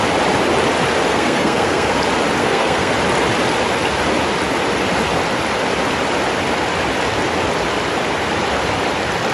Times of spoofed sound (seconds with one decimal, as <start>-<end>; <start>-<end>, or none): 1.1-2.0; 2.4-2.9